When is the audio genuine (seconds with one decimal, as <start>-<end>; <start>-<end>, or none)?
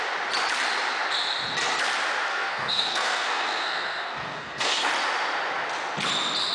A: 0.0-2.3; 4.9-6.5